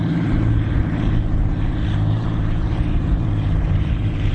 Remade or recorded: remade